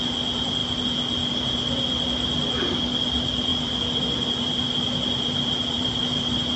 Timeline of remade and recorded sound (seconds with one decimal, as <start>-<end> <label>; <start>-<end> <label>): 0.0-0.6 remade; 0.6-1.3 recorded; 1.3-6.6 remade